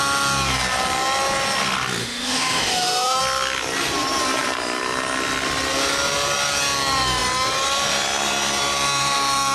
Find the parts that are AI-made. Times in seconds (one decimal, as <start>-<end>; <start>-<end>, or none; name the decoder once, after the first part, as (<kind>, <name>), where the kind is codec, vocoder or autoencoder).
2.0-3.2 (autoencoder, DAC-VAE)